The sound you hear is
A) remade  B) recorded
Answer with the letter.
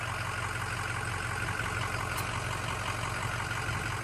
B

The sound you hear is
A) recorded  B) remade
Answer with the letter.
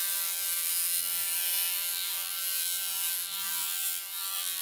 B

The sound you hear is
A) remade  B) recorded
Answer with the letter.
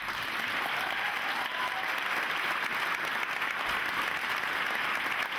B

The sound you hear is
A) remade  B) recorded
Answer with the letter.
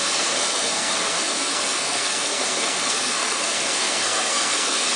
A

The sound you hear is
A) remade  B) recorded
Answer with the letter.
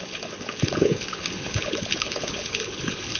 A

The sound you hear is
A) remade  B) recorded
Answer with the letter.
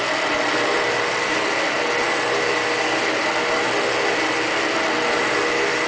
B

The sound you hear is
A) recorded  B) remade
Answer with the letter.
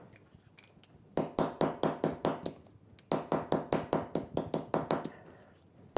A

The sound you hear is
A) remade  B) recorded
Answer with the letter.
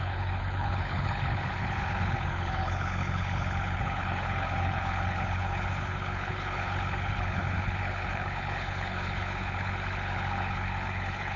A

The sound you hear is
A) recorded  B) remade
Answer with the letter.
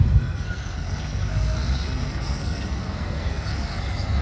B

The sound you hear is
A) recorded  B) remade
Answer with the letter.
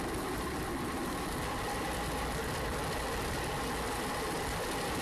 A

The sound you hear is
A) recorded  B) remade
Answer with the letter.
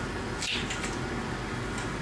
A